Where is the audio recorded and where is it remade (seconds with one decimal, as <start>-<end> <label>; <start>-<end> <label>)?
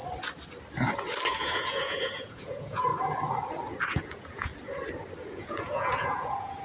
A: 0.0-1.3 recorded; 1.3-2.9 remade; 2.9-3.9 recorded; 3.9-4.5 remade; 4.5-5.2 recorded; 5.2-6.6 remade